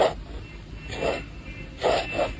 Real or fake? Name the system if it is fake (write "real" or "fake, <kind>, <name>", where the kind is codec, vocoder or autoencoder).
real